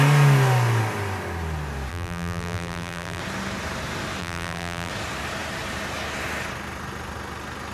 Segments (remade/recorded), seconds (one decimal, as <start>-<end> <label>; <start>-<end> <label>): 0.0-1.9 recorded; 1.9-3.2 remade; 3.2-4.2 recorded; 4.2-4.9 remade; 4.9-7.7 recorded